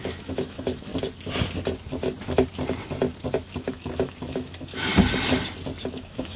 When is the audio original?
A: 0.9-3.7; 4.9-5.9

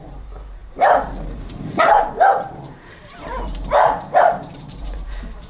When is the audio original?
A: none